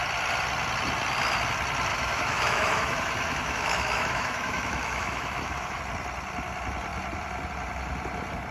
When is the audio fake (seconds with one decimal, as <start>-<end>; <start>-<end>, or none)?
1.9-5.8